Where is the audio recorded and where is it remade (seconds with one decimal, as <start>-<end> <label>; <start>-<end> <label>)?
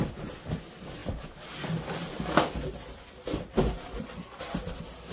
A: 0.0-5.1 recorded